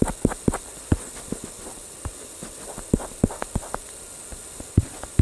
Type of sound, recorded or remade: recorded